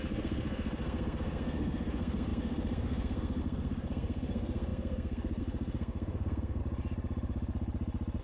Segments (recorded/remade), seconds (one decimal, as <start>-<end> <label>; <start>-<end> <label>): 0.0-6.6 remade; 6.6-8.2 recorded